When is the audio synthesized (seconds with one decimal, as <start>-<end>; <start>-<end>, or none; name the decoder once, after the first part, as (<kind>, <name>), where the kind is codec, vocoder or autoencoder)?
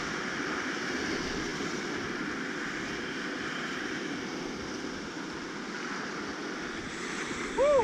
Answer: none